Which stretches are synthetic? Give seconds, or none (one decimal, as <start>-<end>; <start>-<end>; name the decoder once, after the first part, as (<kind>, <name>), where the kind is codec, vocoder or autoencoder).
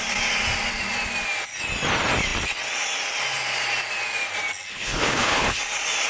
4.7-5.6 (codec, HILCodec)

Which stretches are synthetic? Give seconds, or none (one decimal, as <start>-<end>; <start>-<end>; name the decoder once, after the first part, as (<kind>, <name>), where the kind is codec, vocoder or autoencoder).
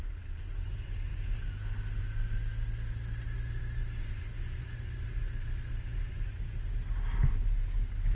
none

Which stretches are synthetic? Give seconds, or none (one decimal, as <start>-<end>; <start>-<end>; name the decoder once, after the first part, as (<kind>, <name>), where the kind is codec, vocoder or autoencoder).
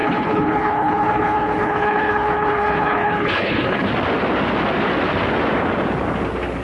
0.0-3.9 (codec, HILCodec)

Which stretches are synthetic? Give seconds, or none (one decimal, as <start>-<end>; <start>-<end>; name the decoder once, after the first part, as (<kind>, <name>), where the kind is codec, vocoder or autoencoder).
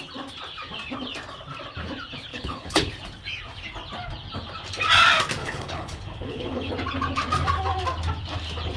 2.3-2.9 (codec, HILCodec); 5.4-6.7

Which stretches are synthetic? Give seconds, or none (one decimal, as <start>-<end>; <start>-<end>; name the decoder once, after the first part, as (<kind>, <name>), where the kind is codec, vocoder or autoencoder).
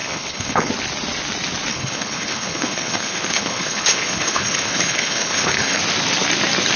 0.0-0.7 (codec, HILCodec); 1.7-5.8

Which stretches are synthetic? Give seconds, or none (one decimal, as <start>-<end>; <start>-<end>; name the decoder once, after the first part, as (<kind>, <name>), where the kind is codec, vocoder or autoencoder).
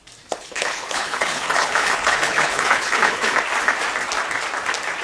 0.4-3.4 (codec, HILCodec)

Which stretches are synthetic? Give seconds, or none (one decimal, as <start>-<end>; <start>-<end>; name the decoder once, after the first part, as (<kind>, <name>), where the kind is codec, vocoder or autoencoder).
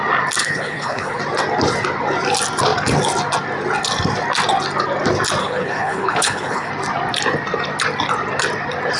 0.4-1.2 (codec, HILCodec); 5.4-6.7